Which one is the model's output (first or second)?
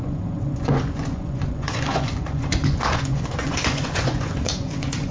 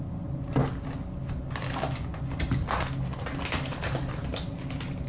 first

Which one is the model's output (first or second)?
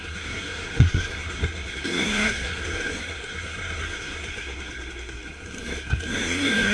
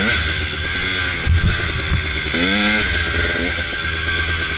first